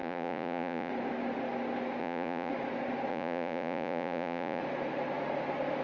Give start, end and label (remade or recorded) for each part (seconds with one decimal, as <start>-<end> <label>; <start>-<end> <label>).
0.0-0.9 remade; 0.9-2.0 recorded; 2.0-2.5 remade; 2.5-3.1 recorded; 3.1-4.6 remade; 4.6-5.8 recorded